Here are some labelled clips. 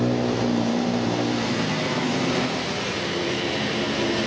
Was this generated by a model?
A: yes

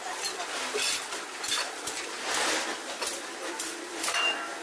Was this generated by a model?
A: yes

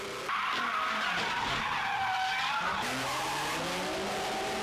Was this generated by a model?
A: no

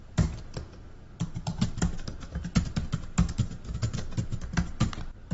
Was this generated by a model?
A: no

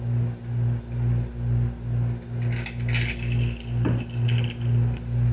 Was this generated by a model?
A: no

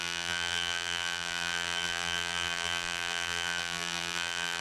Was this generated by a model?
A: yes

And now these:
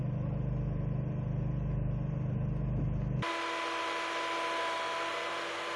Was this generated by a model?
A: no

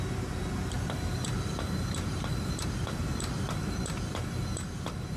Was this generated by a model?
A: yes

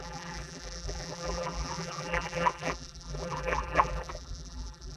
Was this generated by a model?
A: yes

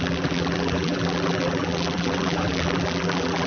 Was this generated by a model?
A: yes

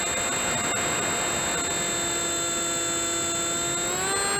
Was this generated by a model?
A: no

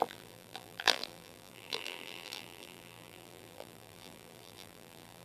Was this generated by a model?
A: yes